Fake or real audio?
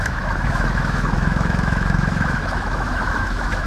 fake